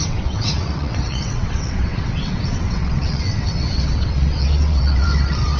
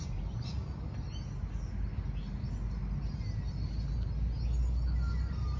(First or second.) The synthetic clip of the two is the first